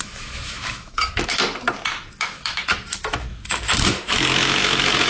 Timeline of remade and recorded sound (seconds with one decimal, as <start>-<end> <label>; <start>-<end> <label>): 0.0-1.4 remade; 1.4-2.2 recorded; 2.2-5.1 remade